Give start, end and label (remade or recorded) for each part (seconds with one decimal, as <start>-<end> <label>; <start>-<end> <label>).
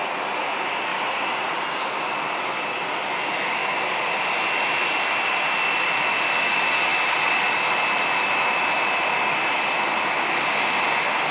0.0-0.9 recorded; 0.9-1.5 remade; 1.5-11.3 recorded